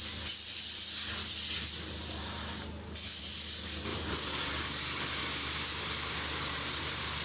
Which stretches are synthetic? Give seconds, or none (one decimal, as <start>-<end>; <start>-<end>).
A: none